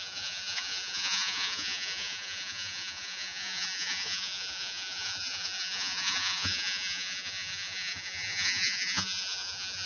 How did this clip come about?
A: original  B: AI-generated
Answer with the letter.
B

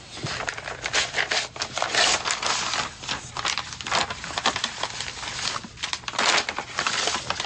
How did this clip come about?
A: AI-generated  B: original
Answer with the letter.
B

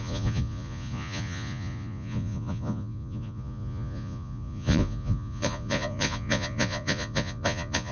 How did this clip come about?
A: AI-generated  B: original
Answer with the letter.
A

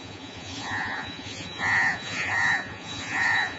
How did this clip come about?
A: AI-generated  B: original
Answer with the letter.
A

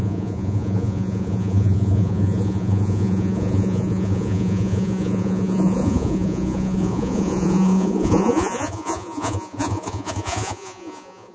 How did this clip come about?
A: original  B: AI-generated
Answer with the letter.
B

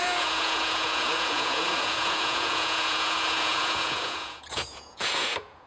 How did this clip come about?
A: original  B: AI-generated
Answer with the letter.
B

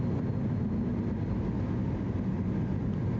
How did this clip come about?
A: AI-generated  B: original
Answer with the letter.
B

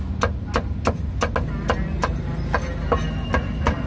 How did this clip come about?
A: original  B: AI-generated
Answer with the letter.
A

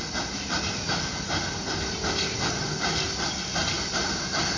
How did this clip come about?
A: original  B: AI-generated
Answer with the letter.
A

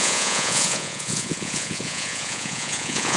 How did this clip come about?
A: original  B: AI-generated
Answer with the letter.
B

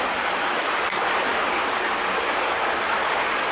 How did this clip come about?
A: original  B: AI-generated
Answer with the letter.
A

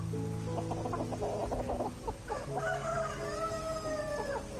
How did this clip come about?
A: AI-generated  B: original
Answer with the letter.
B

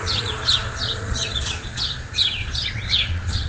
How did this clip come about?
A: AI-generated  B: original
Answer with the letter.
A